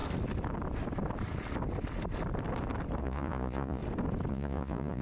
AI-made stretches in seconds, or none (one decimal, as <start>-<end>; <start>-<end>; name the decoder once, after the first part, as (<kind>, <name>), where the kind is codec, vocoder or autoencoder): 3.0-3.8 (vocoder, Vocos); 4.3-5.0